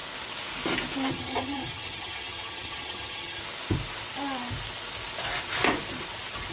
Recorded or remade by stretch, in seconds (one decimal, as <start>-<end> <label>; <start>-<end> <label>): 0.0-1.1 recorded; 1.1-3.4 remade; 3.4-6.5 recorded